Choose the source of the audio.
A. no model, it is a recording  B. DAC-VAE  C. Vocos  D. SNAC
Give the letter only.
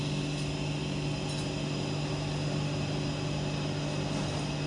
A